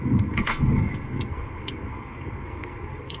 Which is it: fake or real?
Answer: fake